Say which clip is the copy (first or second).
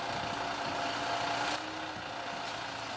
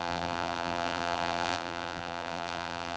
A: second